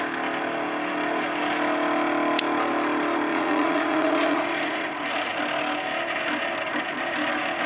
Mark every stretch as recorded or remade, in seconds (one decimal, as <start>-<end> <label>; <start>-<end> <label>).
0.0-3.3 recorded; 3.3-5.4 remade; 5.4-7.7 recorded

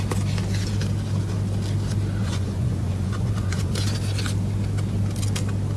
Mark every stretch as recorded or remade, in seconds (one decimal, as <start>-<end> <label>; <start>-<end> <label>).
0.0-2.2 recorded; 2.2-3.7 remade; 3.7-5.8 recorded